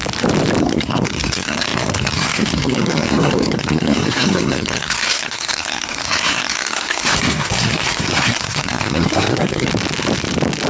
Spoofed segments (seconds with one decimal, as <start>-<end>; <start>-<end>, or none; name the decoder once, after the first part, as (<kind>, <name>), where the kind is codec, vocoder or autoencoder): 0.6-9.7 (codec, SNAC)